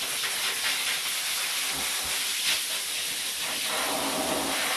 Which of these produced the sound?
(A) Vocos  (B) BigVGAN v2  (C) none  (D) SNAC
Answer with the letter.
C